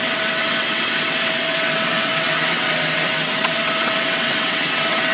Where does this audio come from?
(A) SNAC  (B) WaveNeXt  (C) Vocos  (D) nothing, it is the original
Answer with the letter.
B